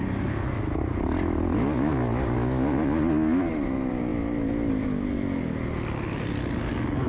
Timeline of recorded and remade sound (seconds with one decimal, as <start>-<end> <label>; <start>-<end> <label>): 0.0-7.1 recorded